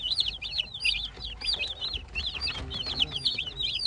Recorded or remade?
recorded